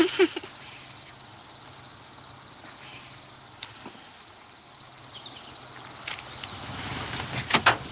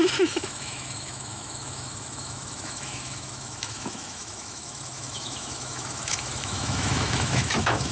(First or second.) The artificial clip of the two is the second